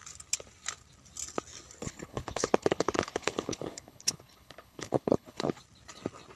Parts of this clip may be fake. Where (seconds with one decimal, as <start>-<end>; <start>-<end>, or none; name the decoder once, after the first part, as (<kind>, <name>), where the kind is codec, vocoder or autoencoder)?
1.8-5.6 (codec, HILCodec)